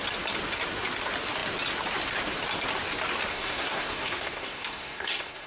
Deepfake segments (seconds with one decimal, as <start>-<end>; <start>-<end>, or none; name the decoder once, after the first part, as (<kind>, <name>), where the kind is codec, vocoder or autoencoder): 3.3-5.5 (codec, SNAC)